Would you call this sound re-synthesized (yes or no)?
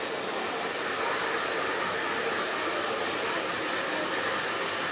no